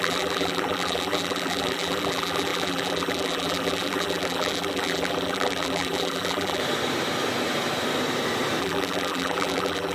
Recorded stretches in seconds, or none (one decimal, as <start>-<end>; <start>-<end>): 6.6-8.6